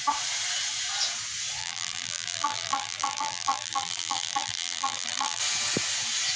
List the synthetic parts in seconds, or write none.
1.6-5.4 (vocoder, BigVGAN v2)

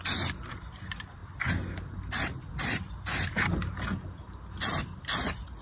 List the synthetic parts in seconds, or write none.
none